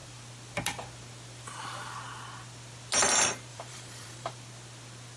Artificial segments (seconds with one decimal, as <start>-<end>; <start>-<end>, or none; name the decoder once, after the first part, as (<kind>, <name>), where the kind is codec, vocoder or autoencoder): 3.5-4.3 (vocoder, BigVGAN v2)